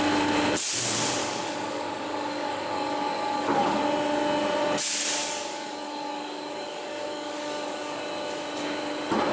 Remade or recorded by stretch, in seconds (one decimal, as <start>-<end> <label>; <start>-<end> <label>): 0.0-1.2 recorded; 1.2-3.8 remade; 3.8-5.2 recorded; 5.2-8.0 remade; 8.0-9.3 recorded